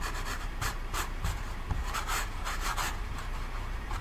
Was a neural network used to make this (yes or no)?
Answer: yes